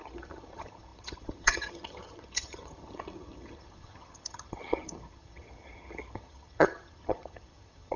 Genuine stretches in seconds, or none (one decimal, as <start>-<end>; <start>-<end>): none